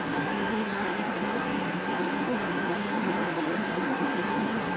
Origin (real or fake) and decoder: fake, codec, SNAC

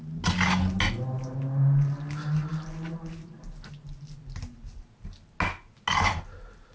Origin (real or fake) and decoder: real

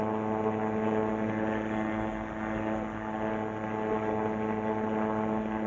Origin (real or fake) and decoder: real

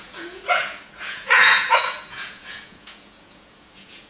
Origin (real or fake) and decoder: fake, vocoder, Vocos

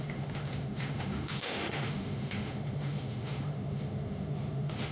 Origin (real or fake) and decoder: fake, autoencoder, DAC-VAE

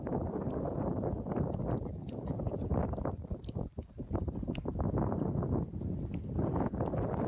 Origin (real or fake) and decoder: fake, vocoder, BigVGAN v2